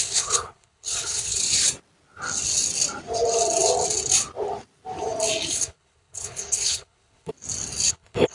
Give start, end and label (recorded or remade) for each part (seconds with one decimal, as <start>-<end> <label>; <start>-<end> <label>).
0.0-1.4 remade; 1.4-5.5 recorded; 5.5-7.3 remade; 7.3-7.9 recorded; 7.9-8.3 remade